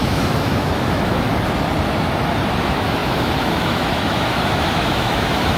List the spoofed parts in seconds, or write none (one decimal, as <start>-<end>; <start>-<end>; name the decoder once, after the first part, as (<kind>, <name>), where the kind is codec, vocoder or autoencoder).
0.0-1.3 (autoencoder, DAC-VAE); 2.6-5.6